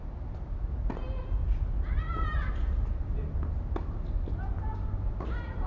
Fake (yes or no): no